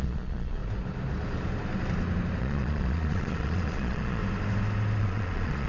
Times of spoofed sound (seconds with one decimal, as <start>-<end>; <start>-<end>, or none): 0.0-0.6; 2.4-4.2; 5.0-5.7